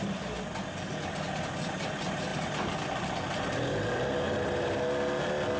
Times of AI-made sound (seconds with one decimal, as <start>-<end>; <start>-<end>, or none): none